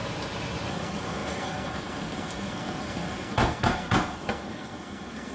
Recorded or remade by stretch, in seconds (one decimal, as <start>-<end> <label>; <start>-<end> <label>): 0.0-0.7 recorded; 0.7-5.3 remade